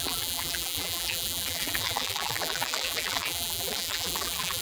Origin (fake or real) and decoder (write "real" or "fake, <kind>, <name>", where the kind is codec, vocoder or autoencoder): fake, vocoder, BigVGAN v2